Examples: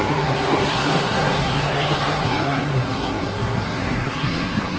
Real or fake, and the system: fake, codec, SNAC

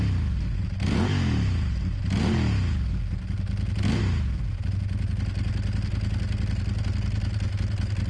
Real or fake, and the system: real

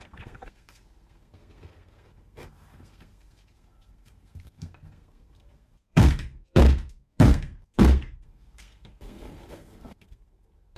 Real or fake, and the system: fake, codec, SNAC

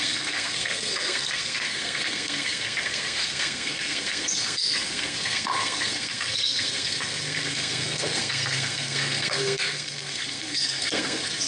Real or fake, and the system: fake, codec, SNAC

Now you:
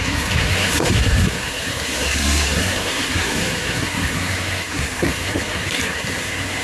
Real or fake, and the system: fake, codec, SNAC